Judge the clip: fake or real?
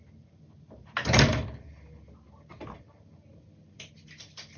real